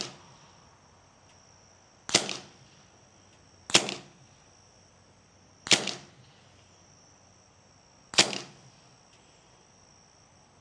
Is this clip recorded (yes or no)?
yes